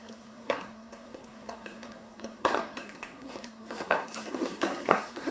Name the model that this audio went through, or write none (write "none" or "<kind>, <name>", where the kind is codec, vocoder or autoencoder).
codec, SNAC